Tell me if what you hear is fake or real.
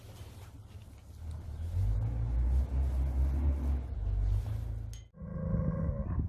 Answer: real